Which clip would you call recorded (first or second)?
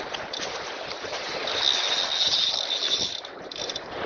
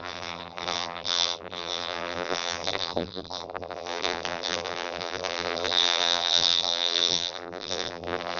first